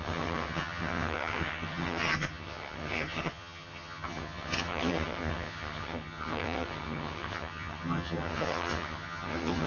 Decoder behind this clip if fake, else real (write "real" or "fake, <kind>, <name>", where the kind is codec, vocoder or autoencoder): fake, vocoder, HiFi-GAN